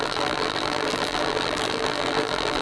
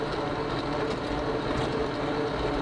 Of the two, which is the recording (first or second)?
second